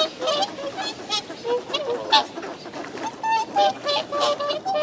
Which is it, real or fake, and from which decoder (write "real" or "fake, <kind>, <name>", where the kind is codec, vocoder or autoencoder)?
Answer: real